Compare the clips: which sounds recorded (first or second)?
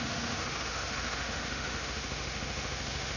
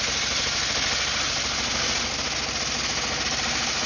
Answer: second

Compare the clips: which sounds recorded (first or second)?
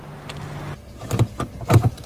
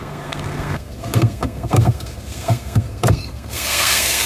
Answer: first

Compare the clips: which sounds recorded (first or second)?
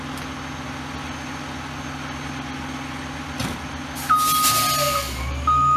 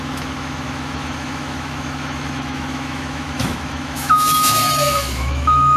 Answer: first